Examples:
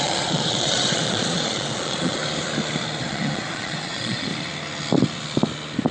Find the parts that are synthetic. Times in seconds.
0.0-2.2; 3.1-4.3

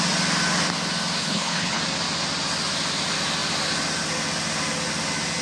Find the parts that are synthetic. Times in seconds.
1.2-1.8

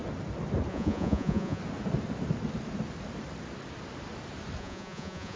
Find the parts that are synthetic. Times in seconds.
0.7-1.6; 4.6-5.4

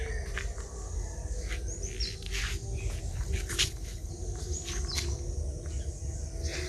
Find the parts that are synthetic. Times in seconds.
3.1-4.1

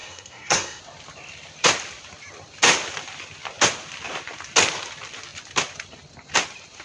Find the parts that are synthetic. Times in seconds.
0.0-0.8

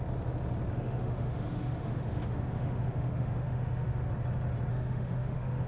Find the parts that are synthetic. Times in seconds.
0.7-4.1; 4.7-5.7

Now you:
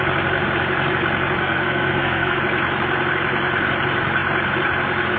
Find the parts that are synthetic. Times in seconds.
1.4-2.4